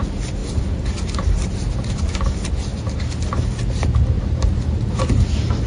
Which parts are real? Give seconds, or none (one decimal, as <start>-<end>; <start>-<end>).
0.0-0.4; 1.9-5.7